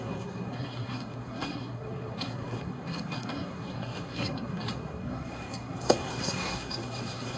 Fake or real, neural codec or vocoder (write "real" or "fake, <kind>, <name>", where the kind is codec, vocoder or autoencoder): fake, codec, SNAC